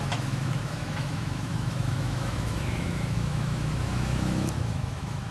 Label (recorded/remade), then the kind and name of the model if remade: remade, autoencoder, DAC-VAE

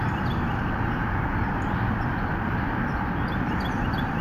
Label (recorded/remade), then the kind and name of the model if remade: recorded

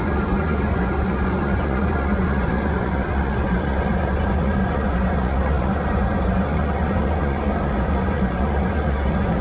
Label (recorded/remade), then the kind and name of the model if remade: remade, vocoder, Vocos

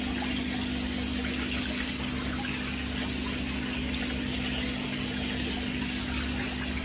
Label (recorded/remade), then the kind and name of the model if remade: recorded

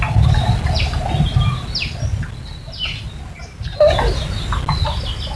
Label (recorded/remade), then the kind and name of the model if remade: recorded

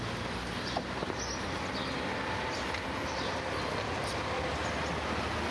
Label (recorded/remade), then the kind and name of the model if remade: recorded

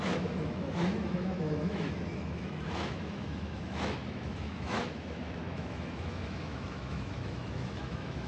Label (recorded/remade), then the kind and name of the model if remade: remade, autoencoder, DAC-VAE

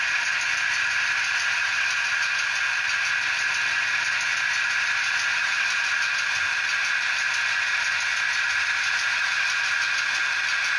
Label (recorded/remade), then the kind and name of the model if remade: recorded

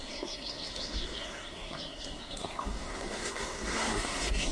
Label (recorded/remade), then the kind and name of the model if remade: remade, codec, SNAC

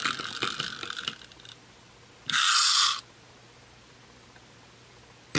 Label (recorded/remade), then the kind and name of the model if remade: recorded